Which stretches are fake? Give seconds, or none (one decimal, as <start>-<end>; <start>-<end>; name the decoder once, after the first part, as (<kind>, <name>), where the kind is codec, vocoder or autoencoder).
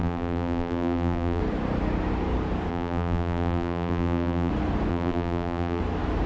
0.0-1.4 (vocoder, BigVGAN v2); 2.7-4.5; 4.9-5.8